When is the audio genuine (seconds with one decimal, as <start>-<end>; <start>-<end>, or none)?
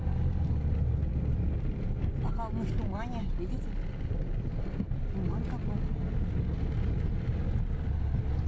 0.0-8.5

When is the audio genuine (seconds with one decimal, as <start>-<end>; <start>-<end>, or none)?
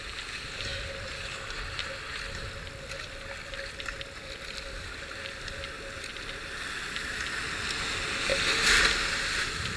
0.0-9.8